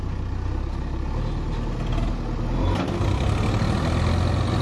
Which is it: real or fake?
real